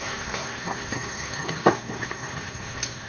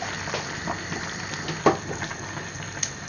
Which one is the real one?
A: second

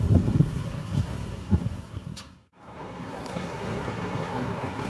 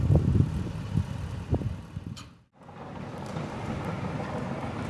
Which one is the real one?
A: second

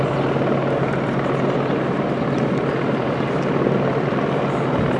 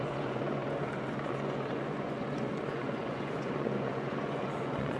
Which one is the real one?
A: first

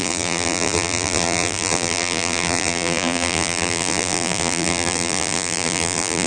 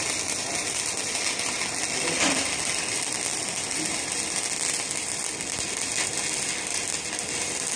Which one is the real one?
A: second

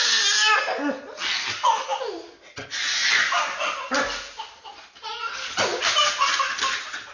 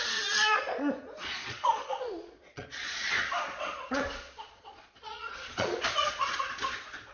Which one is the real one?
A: first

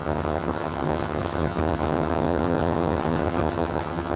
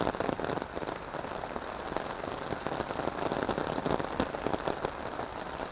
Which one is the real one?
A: second